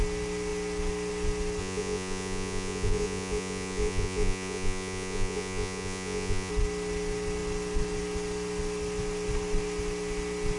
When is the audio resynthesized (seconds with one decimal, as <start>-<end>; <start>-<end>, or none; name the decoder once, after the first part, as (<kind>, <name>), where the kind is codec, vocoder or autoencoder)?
1.6-6.5 (vocoder, Vocos)